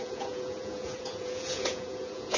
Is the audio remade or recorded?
remade